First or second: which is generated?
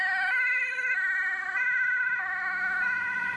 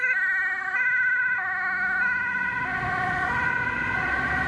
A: first